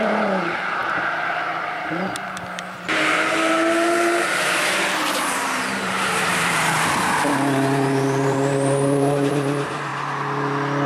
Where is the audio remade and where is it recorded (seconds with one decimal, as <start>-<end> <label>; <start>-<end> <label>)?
0.0-9.9 remade; 9.9-10.9 recorded